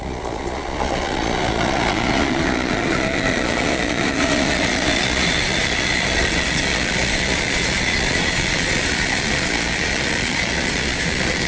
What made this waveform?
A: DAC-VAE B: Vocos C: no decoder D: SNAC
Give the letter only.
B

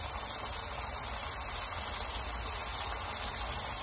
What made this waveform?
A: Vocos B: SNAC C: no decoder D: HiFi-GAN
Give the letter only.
C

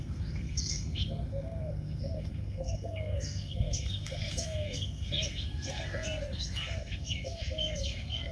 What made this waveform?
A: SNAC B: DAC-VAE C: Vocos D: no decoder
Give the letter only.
A